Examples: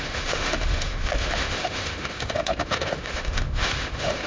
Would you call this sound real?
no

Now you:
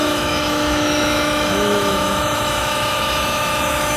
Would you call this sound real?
no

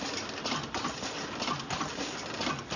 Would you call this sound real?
yes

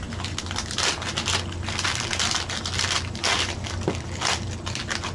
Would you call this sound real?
yes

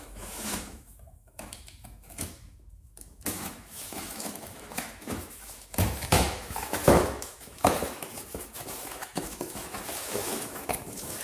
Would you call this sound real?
no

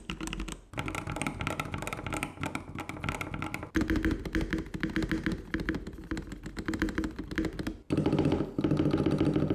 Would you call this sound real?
yes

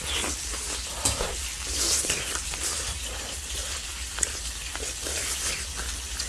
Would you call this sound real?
yes